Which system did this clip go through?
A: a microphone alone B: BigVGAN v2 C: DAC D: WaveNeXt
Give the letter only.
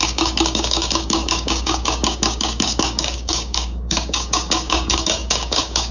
C